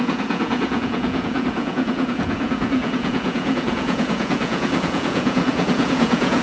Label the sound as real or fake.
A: fake